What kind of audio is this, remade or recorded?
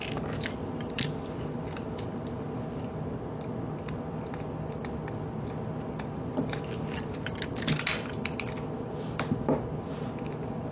recorded